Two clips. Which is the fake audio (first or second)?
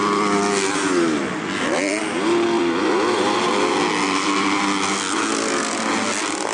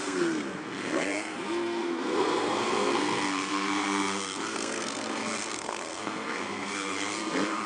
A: second